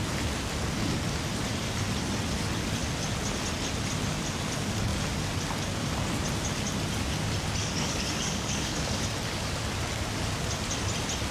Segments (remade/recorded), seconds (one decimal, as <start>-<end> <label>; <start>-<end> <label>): 0.0-7.6 recorded; 7.6-9.0 remade; 9.0-11.3 recorded